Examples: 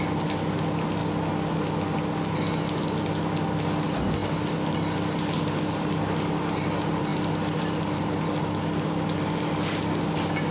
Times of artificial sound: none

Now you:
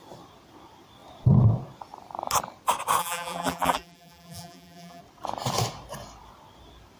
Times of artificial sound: 3.0-5.0 (vocoder, BigVGAN v2)